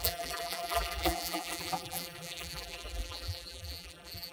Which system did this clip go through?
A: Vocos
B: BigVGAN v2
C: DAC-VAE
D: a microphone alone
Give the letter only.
B